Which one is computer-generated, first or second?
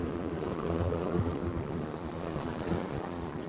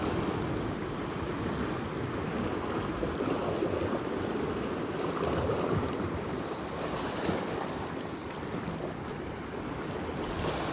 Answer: first